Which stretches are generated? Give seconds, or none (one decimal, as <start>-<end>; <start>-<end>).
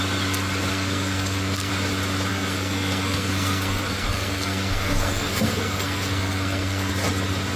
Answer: 0.7-1.7; 2.3-6.9